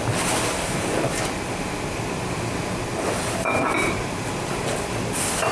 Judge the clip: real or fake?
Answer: real